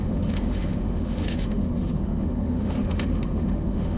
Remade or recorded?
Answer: remade